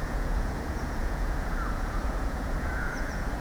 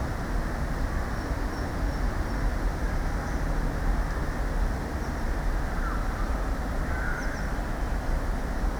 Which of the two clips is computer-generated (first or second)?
first